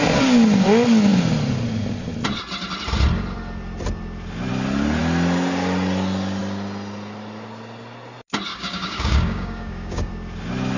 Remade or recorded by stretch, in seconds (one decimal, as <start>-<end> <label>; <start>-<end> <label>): 0.0-8.5 recorded; 8.5-10.1 remade; 10.1-10.8 recorded